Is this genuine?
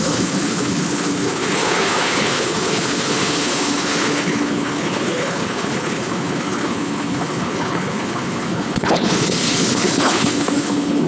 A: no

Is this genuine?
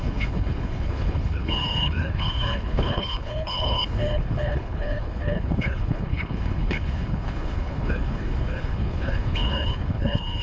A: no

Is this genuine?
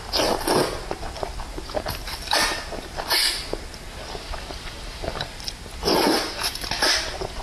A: yes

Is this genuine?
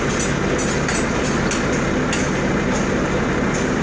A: yes